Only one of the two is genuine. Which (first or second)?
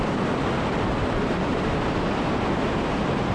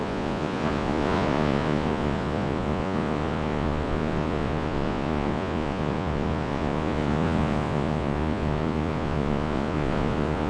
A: first